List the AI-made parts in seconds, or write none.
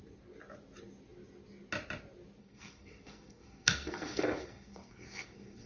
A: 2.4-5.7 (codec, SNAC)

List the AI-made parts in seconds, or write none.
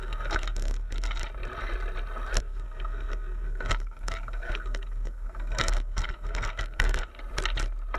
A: 0.0-1.2 (codec, SNAC); 2.4-7.1